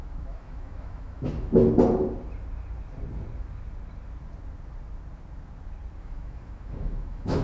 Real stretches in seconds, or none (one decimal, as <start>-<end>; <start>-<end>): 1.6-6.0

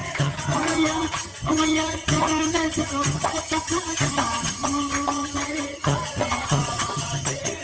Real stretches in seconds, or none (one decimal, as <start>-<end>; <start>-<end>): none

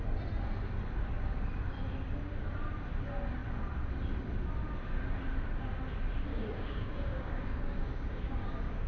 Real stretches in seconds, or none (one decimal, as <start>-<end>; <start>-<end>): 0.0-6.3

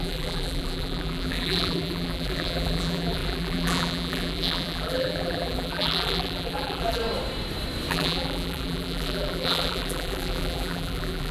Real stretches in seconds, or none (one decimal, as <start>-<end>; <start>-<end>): 7.0-7.9